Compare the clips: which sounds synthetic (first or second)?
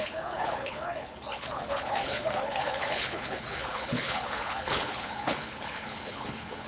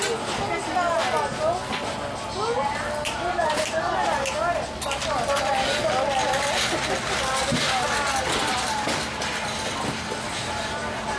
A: first